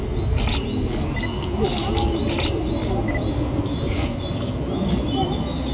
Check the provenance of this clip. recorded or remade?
recorded